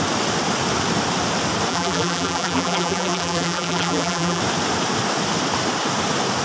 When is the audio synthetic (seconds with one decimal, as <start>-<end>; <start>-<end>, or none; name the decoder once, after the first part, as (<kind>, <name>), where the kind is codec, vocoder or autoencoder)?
1.7-4.4 (vocoder, BigVGAN v2)